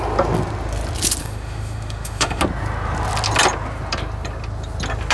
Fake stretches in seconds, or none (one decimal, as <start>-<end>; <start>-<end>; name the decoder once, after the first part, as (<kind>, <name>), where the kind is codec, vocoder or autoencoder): 1.2-2.4 (autoencoder, DAC-VAE)